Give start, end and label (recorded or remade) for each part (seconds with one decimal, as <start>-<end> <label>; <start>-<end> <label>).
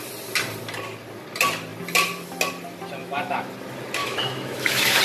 0.0-3.0 recorded; 3.0-3.5 remade; 3.5-4.0 recorded; 4.0-5.0 remade